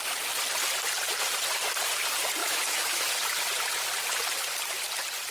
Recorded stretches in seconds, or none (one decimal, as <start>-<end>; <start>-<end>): 0.0-2.4; 3.1-5.3